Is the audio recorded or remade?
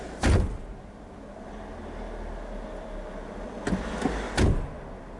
recorded